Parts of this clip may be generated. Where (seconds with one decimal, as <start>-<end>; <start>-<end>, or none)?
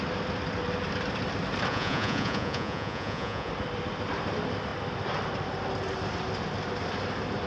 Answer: 1.7-3.5